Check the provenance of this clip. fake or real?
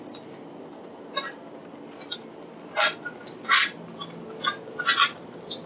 real